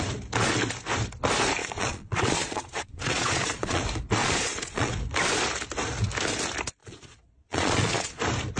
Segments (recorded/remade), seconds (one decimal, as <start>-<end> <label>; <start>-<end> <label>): 0.0-1.6 recorded; 1.6-3.8 remade; 3.8-4.2 recorded; 4.2-4.9 remade; 4.9-6.8 recorded; 6.8-8.2 remade; 8.2-8.6 recorded